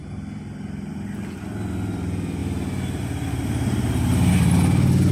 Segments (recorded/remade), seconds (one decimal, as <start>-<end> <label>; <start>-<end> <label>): 0.0-5.1 recorded